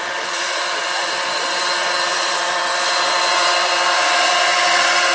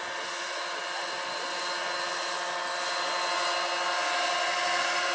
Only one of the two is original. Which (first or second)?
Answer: second